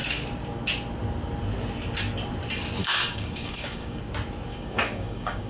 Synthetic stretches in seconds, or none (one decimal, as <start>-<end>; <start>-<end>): 2.8-4.0; 4.5-5.5